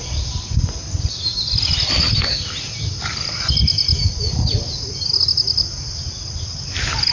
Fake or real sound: real